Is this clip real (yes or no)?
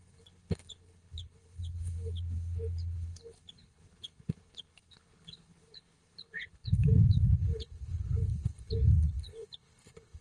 no